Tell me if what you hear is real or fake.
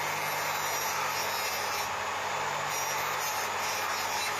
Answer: real